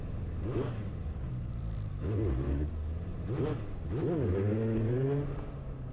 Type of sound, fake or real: real